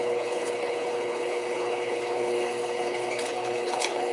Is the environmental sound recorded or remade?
remade